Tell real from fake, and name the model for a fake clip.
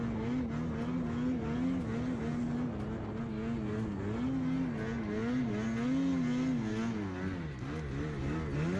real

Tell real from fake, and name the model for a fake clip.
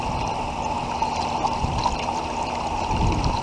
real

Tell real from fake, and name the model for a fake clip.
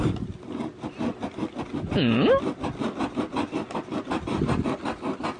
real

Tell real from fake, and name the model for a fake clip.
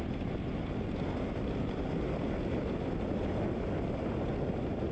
real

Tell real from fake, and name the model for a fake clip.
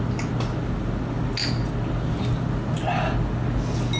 real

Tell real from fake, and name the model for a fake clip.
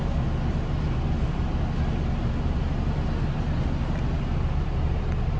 real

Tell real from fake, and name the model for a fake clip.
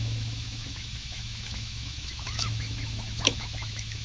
fake, autoencoder, DAC-VAE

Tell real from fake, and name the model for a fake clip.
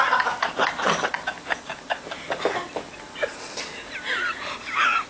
real